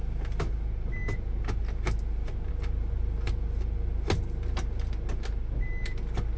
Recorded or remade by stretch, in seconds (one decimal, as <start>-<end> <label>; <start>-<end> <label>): 0.0-6.4 recorded